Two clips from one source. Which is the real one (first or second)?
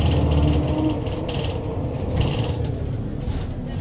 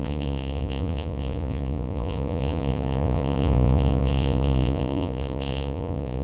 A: first